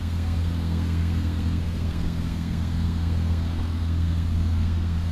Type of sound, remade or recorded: remade